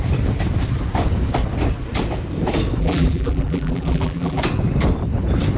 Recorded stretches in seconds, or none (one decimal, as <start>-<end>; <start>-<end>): 0.0-2.8; 4.4-5.6